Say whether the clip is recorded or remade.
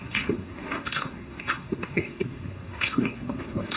remade